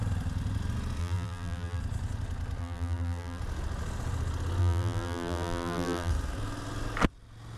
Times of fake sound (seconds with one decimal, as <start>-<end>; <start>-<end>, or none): 1.0-1.8; 2.6-3.4; 4.6-6.1